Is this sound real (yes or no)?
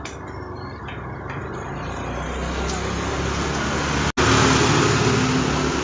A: yes